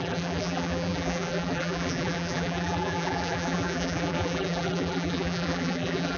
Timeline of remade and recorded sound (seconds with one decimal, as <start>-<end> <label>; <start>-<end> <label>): 0.0-6.2 remade